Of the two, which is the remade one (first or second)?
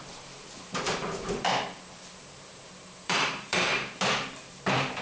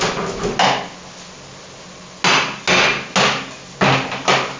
first